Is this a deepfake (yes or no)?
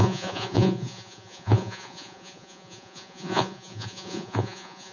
yes